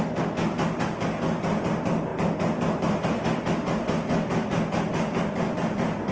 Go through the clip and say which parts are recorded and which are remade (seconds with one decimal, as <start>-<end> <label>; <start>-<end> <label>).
0.0-6.1 recorded